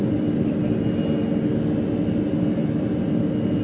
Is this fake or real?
real